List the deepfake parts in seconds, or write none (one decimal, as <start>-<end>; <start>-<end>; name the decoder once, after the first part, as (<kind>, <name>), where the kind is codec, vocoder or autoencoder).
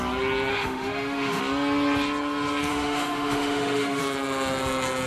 0.5-1.4 (autoencoder, DAC-VAE); 2.7-4.0